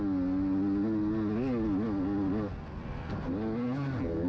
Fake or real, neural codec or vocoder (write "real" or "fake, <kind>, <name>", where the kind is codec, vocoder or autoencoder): real